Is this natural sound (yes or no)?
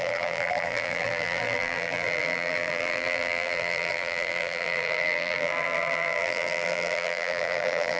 no